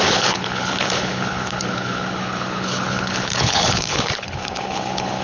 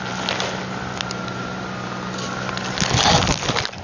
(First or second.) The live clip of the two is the second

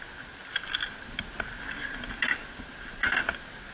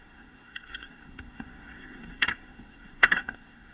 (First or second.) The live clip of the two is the first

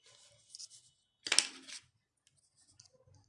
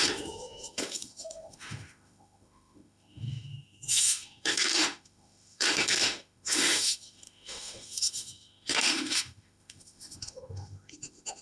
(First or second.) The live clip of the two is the first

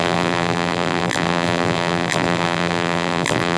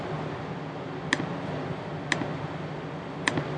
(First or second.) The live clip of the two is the second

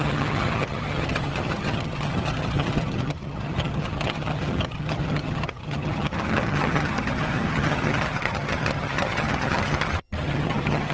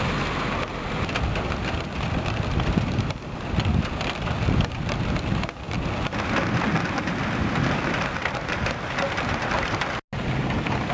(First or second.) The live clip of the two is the second